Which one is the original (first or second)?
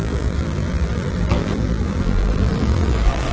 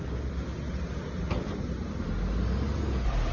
second